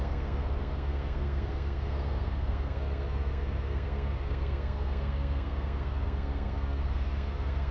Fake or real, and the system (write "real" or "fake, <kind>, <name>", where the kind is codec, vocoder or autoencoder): fake, codec, SNAC